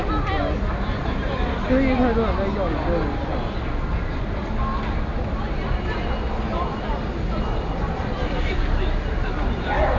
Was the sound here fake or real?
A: real